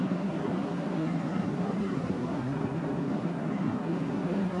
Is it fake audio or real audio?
fake